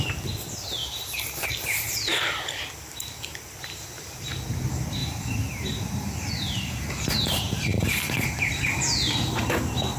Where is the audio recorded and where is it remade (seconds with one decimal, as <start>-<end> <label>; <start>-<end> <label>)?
0.0-0.8 recorded; 0.8-1.5 remade; 1.5-5.0 recorded; 5.0-8.6 remade; 8.6-10.0 recorded

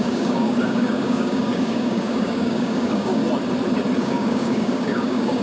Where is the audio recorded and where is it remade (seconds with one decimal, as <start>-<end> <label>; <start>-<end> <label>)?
0.0-3.2 remade; 3.2-4.0 recorded; 4.0-5.4 remade

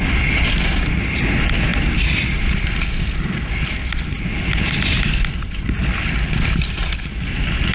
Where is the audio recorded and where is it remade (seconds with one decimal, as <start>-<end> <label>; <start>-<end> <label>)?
0.0-7.7 recorded